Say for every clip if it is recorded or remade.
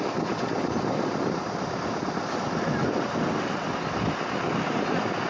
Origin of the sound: recorded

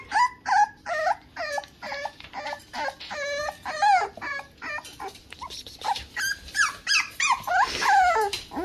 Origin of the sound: recorded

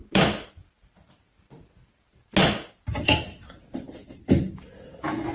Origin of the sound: recorded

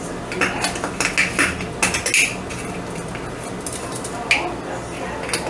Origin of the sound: recorded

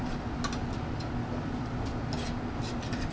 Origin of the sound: recorded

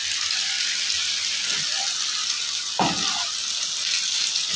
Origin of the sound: recorded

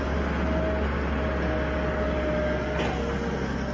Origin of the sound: recorded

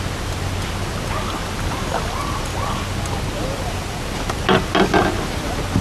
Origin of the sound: recorded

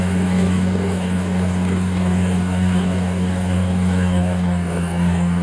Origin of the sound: remade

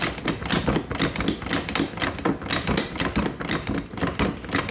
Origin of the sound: recorded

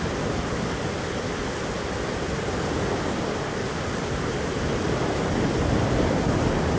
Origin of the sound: recorded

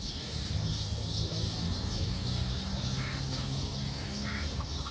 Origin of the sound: remade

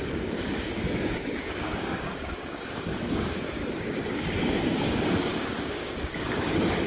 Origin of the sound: remade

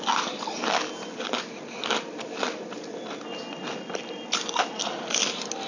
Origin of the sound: recorded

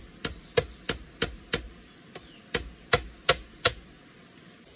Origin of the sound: recorded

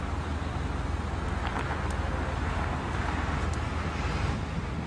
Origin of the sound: recorded